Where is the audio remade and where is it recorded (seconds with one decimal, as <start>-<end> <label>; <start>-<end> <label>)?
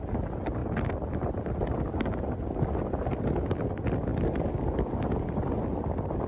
0.0-6.3 recorded